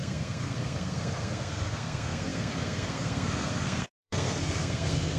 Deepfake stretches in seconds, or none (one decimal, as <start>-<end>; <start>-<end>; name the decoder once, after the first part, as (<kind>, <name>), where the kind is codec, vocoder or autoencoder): 0.0-5.2 (codec, SNAC)